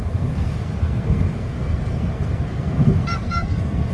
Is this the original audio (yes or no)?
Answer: no